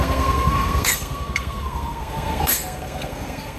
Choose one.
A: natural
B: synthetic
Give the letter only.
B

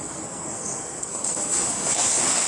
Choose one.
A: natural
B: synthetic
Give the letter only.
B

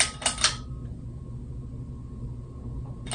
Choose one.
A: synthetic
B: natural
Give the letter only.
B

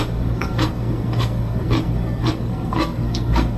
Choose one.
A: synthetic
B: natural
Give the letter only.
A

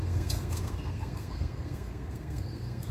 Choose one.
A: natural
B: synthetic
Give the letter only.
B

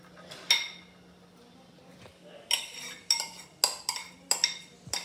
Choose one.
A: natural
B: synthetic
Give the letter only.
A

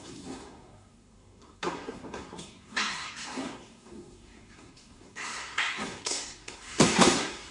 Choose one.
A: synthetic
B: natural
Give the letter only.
A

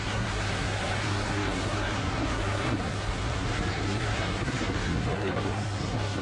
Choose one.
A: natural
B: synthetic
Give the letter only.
B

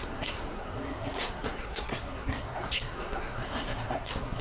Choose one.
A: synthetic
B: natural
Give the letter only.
A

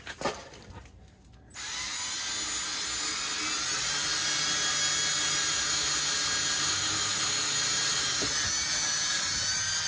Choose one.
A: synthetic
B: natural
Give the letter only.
B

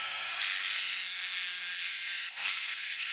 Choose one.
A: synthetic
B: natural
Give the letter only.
A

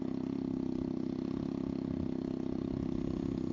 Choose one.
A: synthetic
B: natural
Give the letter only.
B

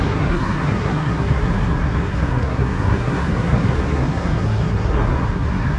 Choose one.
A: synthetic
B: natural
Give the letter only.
A